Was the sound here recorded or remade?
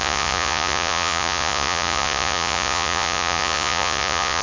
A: remade